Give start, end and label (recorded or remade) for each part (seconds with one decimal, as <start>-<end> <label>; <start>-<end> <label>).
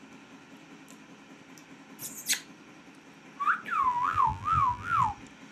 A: 0.0-3.9 recorded; 3.9-5.1 remade; 5.1-5.5 recorded